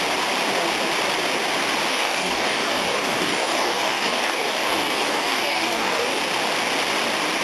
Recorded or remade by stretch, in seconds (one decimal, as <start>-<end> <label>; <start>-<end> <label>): 0.0-1.9 recorded; 1.9-6.2 remade; 6.2-7.4 recorded